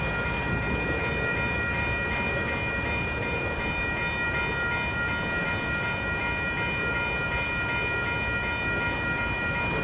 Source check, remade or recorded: recorded